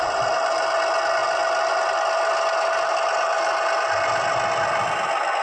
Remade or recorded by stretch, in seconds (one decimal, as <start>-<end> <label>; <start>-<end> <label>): 0.0-5.4 recorded